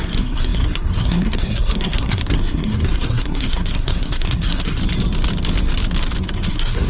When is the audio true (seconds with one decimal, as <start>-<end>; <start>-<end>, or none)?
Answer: 4.8-6.5